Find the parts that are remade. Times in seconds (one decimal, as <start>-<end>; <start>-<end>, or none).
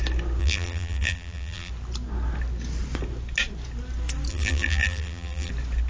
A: 0.4-1.7; 4.3-5.5